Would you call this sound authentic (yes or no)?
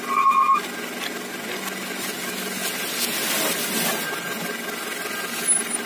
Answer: yes